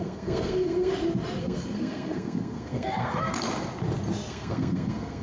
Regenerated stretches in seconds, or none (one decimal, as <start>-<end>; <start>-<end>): 0.0-0.9; 1.4-3.3; 4.3-5.2